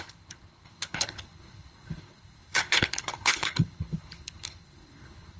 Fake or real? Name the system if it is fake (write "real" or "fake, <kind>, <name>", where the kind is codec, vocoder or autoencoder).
fake, codec, HILCodec